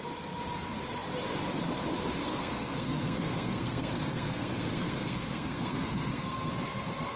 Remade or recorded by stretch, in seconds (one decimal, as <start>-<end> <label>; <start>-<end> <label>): 0.0-2.2 recorded; 2.2-6.5 remade; 6.5-7.2 recorded